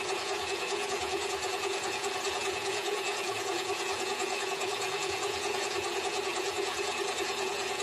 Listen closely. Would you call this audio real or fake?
fake